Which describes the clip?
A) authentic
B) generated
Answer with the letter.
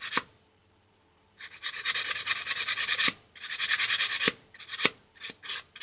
A